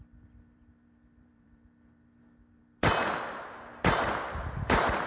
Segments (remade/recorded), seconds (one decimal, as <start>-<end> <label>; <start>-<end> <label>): 0.0-2.6 remade; 2.6-5.1 recorded